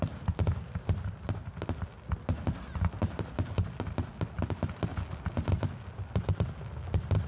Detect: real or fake real